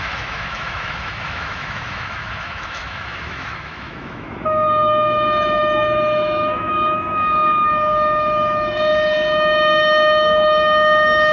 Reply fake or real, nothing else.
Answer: fake